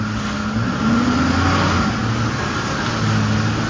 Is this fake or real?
real